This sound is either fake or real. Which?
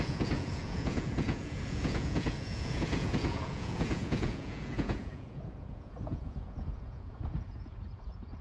fake